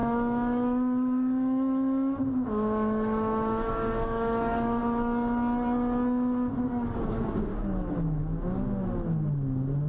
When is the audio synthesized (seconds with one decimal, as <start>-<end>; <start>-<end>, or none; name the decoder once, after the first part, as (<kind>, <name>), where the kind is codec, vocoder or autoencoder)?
0.0-4.8 (autoencoder, DAC-VAE); 7.5-8.2